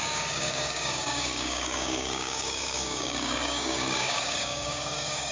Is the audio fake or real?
fake